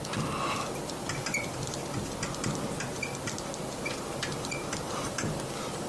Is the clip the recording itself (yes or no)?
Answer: yes